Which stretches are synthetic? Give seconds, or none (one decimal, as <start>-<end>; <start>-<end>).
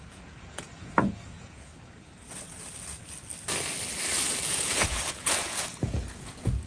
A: 0.0-1.7; 4.4-6.7